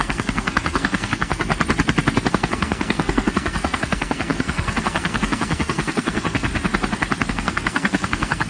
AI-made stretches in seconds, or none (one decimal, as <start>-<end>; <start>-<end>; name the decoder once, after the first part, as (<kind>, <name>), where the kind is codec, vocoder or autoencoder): 0.0-1.5 (codec, SNAC); 2.3-6.5; 7.3-8.5